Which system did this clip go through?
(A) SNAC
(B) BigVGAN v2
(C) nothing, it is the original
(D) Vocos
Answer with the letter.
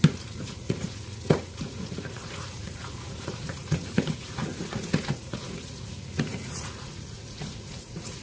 D